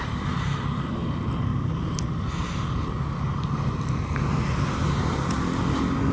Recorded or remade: recorded